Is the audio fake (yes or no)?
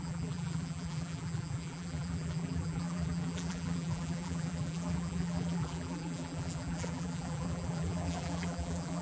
yes